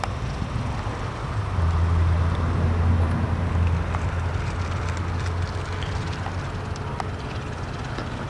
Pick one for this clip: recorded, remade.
recorded